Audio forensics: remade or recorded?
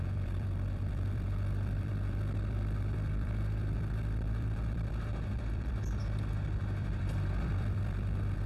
remade